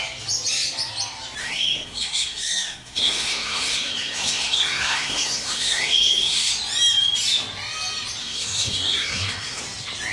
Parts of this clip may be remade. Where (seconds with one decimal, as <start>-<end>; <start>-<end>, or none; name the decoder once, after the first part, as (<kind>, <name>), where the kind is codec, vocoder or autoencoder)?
1.4-6.5 (codec, SNAC); 8.2-9.6